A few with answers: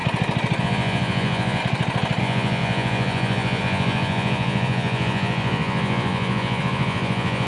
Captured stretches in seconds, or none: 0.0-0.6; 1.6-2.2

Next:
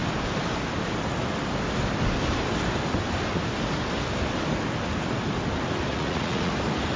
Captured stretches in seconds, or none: 0.0-5.9; 6.5-7.0

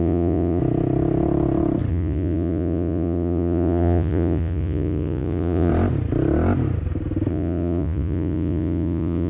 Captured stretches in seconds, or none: 0.6-1.9; 5.7-7.3

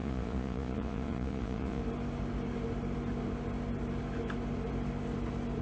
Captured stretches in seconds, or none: 1.8-5.6

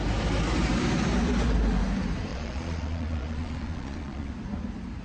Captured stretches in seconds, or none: 0.0-2.3; 4.3-5.0

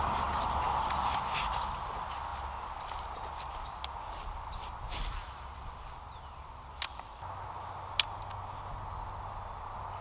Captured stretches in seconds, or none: 0.0-10.0